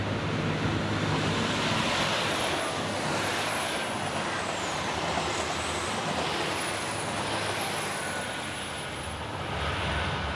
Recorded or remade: recorded